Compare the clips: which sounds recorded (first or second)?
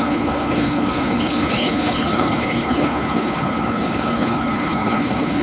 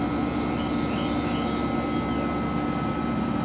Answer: second